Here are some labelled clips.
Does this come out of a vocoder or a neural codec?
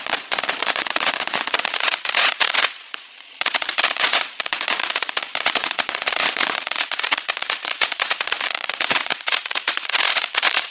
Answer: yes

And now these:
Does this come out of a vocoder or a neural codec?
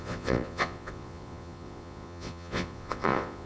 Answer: yes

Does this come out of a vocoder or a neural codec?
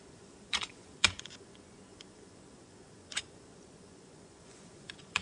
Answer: yes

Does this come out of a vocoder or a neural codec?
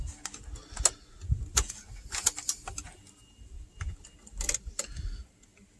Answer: no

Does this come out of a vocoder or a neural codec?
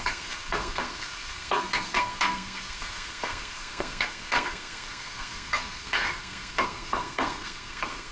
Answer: yes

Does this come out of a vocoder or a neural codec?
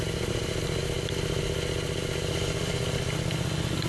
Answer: yes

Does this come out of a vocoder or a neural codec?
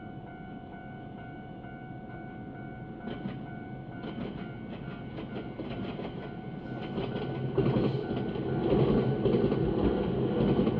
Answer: no